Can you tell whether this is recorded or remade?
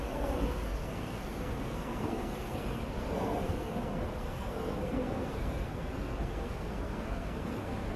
remade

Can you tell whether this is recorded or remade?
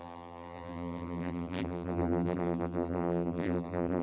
remade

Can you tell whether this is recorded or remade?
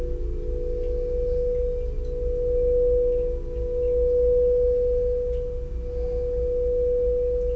recorded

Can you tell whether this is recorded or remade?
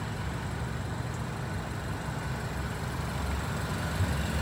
recorded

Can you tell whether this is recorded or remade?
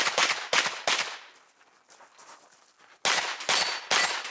recorded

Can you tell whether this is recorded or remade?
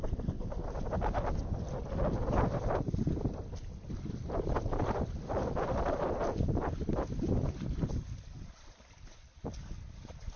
recorded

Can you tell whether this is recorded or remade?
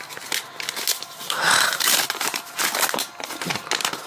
recorded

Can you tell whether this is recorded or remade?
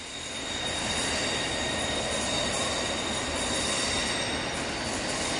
recorded